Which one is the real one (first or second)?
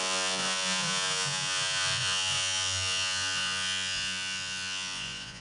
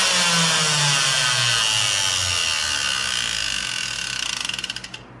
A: second